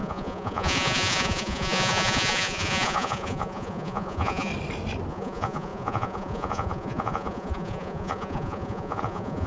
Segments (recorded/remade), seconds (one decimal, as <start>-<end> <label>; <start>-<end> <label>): 0.0-4.5 remade; 4.5-5.1 recorded; 5.1-9.5 remade